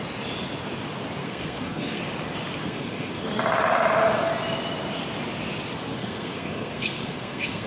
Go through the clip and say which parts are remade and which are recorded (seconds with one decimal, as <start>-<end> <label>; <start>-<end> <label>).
0.0-1.2 recorded; 1.2-2.0 remade; 2.0-2.6 recorded; 2.6-3.3 remade; 3.3-5.9 recorded; 5.9-7.7 remade